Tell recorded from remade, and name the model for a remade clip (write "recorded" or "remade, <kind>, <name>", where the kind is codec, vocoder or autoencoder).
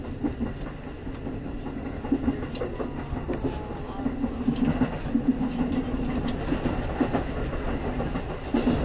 recorded